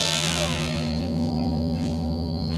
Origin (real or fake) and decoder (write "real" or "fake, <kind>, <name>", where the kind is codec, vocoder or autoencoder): fake, vocoder, BigVGAN v2